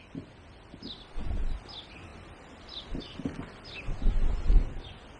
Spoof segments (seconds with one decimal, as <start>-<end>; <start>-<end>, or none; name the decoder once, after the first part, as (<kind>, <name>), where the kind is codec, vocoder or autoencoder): none